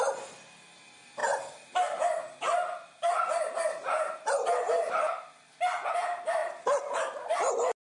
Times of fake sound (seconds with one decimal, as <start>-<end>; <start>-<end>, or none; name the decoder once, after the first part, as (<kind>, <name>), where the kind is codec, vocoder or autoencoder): 6.4-7.5 (vocoder, BigVGAN v2)